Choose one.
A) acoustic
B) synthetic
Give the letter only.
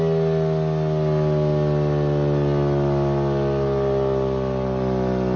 A